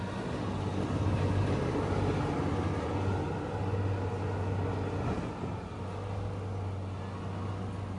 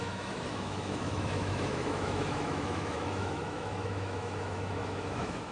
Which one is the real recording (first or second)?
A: first